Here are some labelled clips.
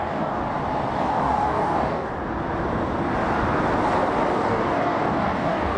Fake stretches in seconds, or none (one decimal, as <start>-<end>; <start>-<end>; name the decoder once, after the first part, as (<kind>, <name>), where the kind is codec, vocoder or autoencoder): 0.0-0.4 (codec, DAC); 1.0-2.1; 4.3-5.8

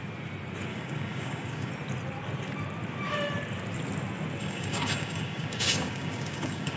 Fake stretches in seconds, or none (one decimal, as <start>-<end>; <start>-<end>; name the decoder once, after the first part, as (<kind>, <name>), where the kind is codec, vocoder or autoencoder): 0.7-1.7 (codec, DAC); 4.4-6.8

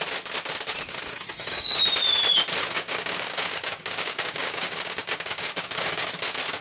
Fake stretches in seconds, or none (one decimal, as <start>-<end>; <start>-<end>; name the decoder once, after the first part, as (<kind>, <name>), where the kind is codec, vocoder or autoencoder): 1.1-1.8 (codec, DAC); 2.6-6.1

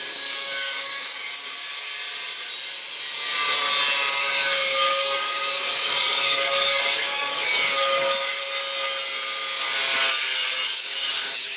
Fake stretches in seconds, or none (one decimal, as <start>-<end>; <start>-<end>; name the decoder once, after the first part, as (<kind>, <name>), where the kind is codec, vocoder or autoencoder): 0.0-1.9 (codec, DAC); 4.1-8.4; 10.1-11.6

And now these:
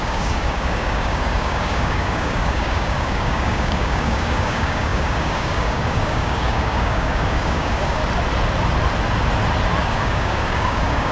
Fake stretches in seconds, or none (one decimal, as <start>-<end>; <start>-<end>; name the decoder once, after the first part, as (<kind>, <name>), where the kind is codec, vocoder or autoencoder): 0.0-8.0 (codec, DAC); 9.8-11.1

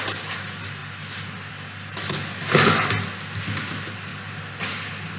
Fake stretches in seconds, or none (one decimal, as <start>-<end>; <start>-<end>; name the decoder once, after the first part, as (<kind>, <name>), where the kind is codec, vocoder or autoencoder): none

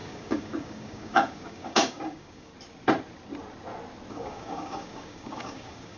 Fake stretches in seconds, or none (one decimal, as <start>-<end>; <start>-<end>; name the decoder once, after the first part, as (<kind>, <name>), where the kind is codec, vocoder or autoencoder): 0.0-2.5 (codec, DAC); 4.1-6.0

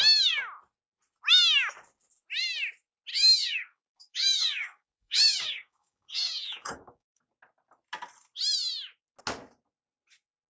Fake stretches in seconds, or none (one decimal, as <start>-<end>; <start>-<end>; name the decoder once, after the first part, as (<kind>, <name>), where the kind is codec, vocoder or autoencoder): 3.1-7.2 (codec, DAC)